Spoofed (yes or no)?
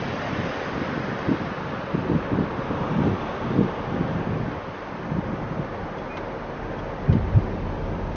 no